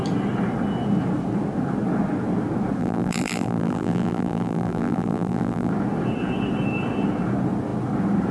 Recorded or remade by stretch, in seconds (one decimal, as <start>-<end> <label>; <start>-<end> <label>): 0.0-2.8 recorded; 2.8-5.7 remade; 5.7-8.3 recorded